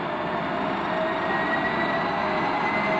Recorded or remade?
recorded